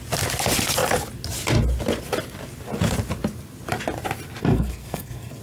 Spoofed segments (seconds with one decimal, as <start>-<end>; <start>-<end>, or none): 4.4-5.4